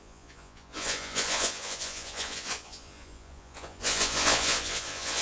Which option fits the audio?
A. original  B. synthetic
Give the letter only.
B